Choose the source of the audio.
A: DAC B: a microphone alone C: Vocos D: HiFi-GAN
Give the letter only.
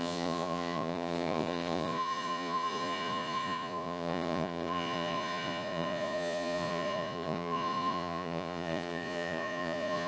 C